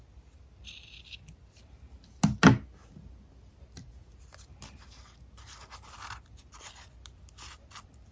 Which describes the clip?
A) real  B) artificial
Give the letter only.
A